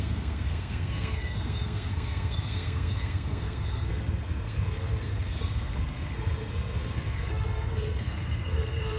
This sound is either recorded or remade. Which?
remade